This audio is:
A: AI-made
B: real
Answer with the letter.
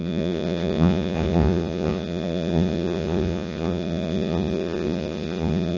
A